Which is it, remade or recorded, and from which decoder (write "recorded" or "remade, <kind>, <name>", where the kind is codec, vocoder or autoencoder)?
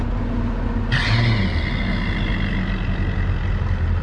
recorded